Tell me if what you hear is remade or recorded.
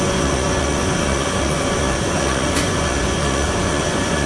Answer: remade